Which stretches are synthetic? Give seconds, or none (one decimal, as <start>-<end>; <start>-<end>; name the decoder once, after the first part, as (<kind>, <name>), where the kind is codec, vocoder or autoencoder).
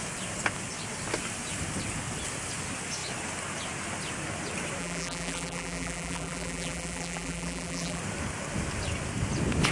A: 4.8-8.0 (vocoder, BigVGAN v2)